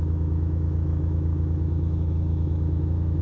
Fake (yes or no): yes